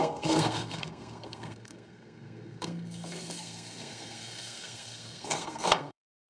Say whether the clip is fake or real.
fake